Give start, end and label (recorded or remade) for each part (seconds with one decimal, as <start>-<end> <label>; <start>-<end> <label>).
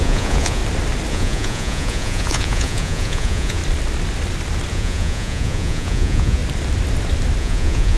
0.0-0.6 remade; 0.6-1.1 recorded; 1.1-3.6 remade; 3.6-4.7 recorded; 4.7-6.4 remade; 6.4-7.4 recorded; 7.4-8.0 remade